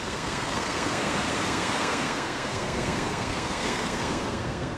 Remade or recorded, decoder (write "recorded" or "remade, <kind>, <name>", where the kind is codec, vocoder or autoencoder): remade, codec, SNAC